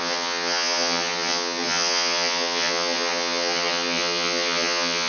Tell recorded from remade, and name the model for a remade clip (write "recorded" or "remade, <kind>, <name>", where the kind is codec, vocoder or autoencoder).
remade, vocoder, HiFi-GAN